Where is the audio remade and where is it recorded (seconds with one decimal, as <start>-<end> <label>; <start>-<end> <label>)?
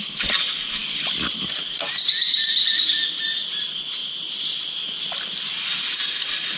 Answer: 0.0-6.6 recorded